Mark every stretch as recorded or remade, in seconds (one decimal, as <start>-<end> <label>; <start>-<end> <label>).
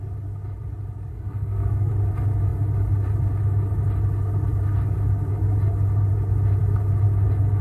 0.0-1.1 recorded; 1.1-1.9 remade; 1.9-7.6 recorded